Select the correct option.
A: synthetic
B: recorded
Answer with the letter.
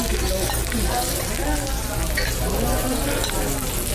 B